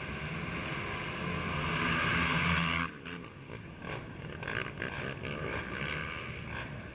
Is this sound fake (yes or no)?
no